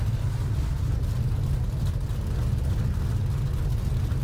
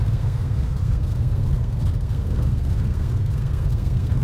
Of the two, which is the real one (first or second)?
first